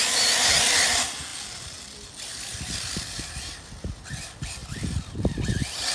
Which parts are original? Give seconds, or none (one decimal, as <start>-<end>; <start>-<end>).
0.0-1.3; 2.1-4.6; 5.5-5.9